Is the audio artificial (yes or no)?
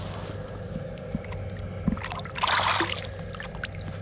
no